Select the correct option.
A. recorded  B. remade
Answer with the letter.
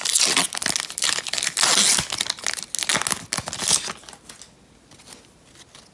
A